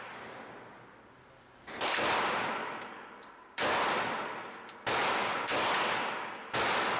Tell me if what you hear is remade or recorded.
recorded